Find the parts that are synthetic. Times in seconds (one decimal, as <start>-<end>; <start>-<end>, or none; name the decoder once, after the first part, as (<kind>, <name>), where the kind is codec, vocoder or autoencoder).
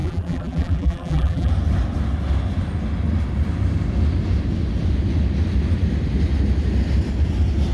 0.0-1.5 (vocoder, BigVGAN v2)